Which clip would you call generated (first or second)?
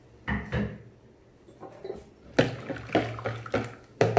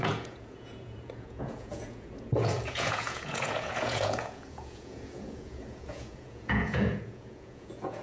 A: second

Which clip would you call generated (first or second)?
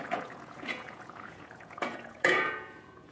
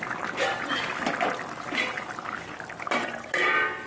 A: first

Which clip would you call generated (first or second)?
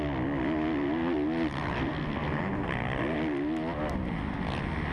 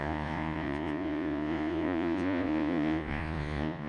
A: second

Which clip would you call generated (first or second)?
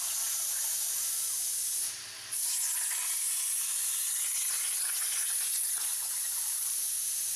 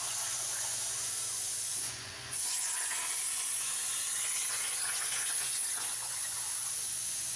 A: second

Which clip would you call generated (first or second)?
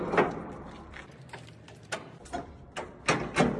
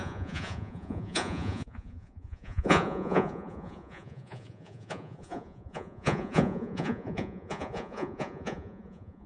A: second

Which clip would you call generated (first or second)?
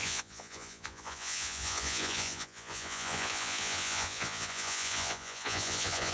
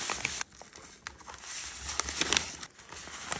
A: first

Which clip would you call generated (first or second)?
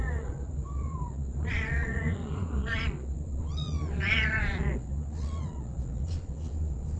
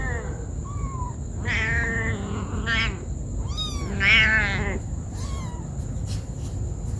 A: first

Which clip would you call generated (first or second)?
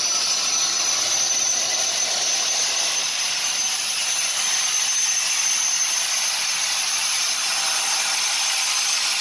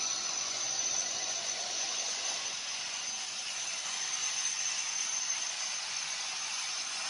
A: second